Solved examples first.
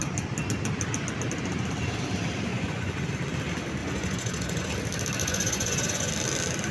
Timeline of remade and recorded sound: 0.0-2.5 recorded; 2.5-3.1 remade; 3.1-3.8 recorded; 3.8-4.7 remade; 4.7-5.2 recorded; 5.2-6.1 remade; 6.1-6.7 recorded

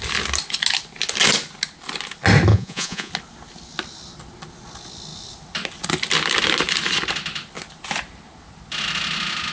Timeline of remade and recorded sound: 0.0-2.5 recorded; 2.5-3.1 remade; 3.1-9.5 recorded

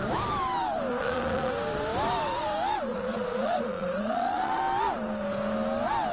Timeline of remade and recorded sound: 0.0-0.9 recorded; 0.9-1.5 remade; 1.5-2.9 recorded; 2.9-4.6 remade; 4.6-6.1 recorded

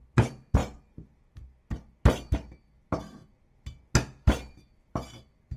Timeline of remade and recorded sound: 0.0-5.6 recorded

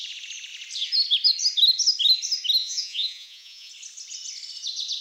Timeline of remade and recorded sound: 0.0-2.6 recorded; 2.6-3.7 remade; 3.7-5.0 recorded